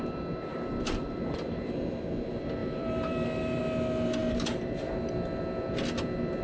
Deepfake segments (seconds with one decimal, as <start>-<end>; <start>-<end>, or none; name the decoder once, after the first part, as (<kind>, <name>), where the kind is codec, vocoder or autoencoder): 0.5-1.8 (vocoder, BigVGAN v2); 2.6-3.6